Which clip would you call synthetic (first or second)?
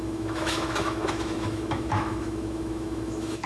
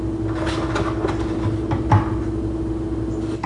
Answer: first